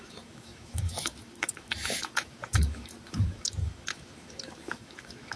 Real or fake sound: fake